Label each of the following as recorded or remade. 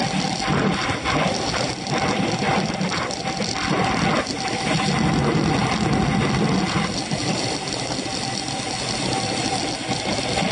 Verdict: recorded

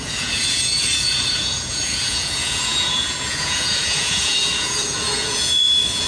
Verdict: remade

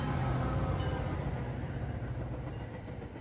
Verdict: recorded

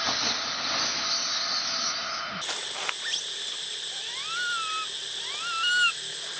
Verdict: recorded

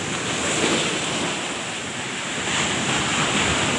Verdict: recorded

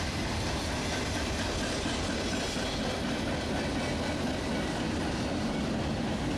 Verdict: recorded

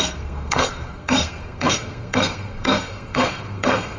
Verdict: remade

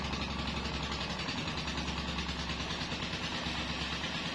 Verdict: recorded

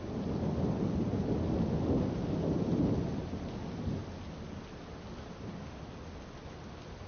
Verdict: recorded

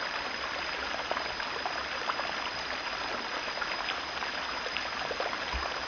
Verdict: recorded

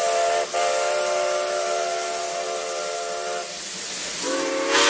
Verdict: recorded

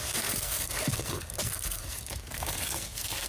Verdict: remade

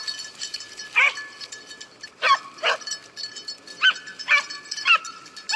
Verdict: recorded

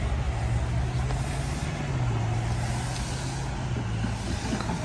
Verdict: recorded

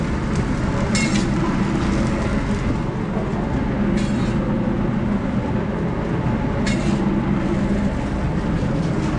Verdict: recorded